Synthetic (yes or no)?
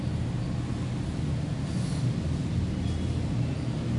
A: no